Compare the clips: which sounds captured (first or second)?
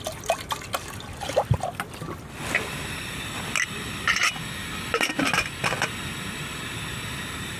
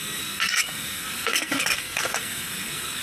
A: first